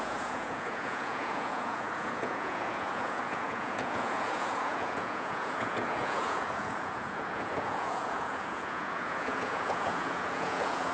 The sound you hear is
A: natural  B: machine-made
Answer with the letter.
B